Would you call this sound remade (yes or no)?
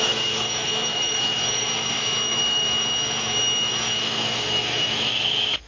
yes